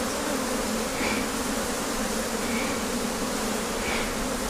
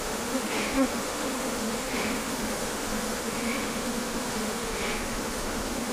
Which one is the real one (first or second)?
first